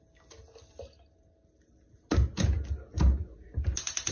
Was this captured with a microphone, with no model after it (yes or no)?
yes